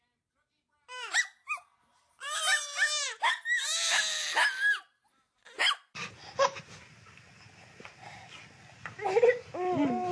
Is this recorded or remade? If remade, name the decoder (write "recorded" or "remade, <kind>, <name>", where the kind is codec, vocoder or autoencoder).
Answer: recorded